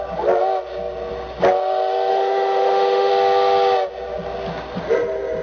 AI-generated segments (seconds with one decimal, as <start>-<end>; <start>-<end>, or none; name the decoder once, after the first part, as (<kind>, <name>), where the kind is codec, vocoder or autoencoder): 2.1-3.1 (autoencoder, DAC-VAE)